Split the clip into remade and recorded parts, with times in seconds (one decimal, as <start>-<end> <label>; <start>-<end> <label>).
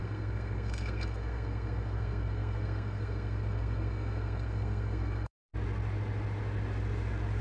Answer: 0.0-5.5 remade; 5.5-7.4 recorded